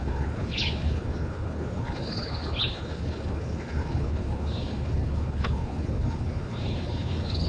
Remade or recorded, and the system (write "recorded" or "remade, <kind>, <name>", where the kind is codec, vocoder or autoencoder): remade, codec, HILCodec